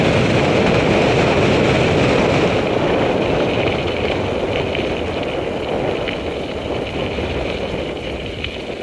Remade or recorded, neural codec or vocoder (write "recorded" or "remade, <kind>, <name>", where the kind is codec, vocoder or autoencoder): recorded